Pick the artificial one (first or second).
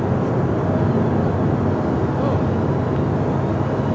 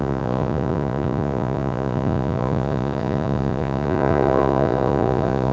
second